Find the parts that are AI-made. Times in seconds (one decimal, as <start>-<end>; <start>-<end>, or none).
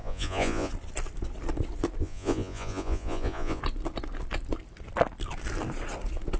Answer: 0.0-0.7; 2.0-3.6